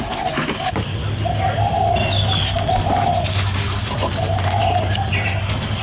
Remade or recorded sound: recorded